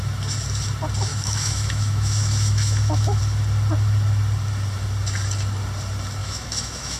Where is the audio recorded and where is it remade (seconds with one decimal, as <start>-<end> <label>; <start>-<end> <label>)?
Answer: 0.0-1.1 recorded; 1.1-3.2 remade; 3.2-6.2 recorded; 6.2-7.0 remade